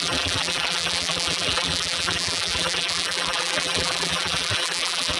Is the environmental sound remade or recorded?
remade